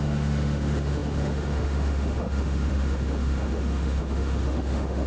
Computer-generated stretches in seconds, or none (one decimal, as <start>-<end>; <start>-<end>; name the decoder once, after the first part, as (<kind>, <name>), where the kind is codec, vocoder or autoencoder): 0.0-5.1 (autoencoder, DAC-VAE)

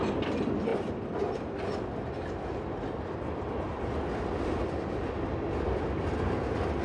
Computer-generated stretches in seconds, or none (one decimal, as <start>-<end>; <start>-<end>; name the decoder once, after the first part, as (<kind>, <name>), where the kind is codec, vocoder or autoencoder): none